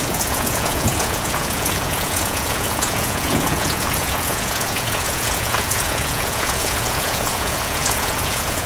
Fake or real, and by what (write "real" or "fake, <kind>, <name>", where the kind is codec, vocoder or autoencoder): fake, vocoder, Vocos